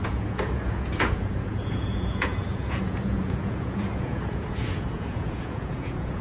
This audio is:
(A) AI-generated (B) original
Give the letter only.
A